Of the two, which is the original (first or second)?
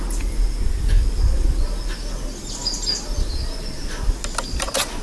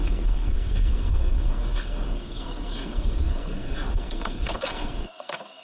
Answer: first